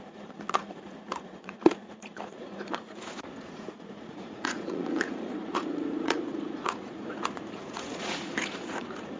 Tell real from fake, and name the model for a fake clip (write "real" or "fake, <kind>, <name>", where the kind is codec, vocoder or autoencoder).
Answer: fake, vocoder, Vocos